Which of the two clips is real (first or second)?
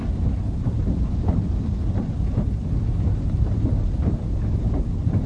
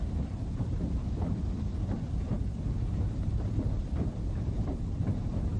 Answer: first